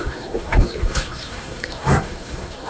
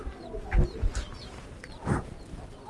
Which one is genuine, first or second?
second